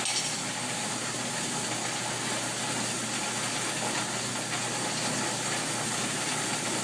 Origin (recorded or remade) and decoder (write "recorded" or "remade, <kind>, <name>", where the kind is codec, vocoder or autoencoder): recorded